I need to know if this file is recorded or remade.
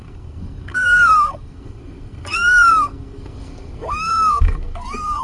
remade